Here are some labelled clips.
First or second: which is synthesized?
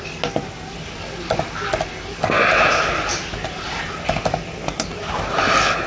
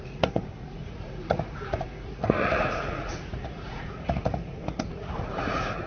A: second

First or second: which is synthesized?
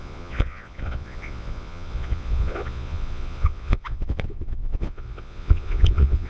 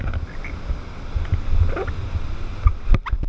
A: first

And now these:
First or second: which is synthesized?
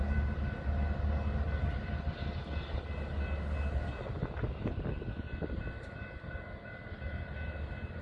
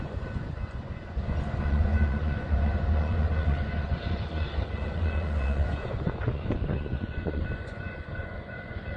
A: second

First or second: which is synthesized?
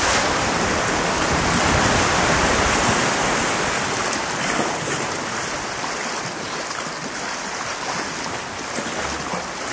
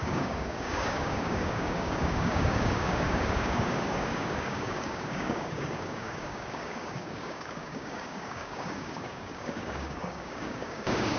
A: second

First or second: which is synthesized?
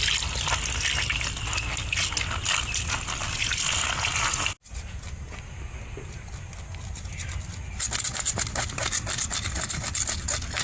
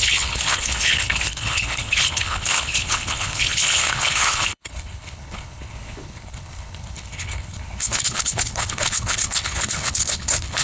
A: second